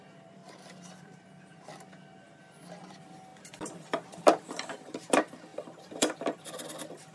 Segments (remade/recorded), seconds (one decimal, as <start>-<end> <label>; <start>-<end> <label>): 0.0-0.4 remade; 0.4-0.9 recorded; 0.9-1.5 remade; 1.5-2.9 recorded; 2.9-7.1 remade

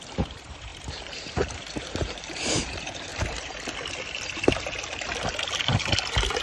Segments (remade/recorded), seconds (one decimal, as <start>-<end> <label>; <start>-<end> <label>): 0.0-3.1 remade; 3.1-6.4 recorded

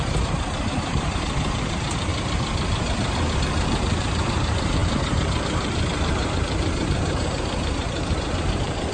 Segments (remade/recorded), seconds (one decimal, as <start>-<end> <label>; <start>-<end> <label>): 0.0-2.1 remade; 2.1-3.3 recorded; 3.3-8.9 remade

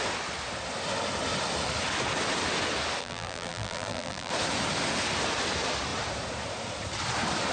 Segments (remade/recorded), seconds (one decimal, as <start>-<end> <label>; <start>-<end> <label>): 0.0-3.0 recorded; 3.0-4.3 remade; 4.3-7.5 recorded

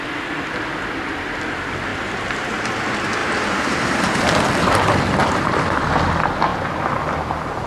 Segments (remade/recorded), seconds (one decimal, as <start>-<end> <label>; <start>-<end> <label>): 0.0-1.9 recorded; 1.9-2.5 remade; 2.5-3.2 recorded; 3.2-4.2 remade; 4.2-7.7 recorded

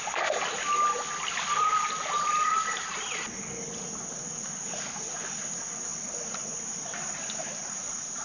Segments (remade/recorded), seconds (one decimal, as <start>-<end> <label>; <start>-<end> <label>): 0.0-5.9 recorded; 5.9-7.5 remade; 7.5-8.2 recorded

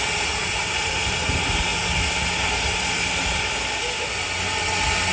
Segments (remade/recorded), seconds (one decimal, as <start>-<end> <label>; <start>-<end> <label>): 0.0-1.7 remade; 1.7-5.1 recorded

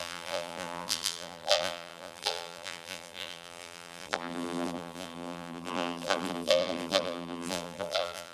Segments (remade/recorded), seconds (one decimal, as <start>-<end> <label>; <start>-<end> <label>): 0.0-8.3 remade